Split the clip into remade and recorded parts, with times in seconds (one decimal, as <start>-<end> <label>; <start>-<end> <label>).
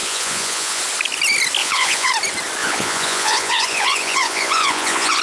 0.0-0.8 remade; 0.8-1.6 recorded; 1.6-2.1 remade; 2.1-2.6 recorded; 2.6-5.2 remade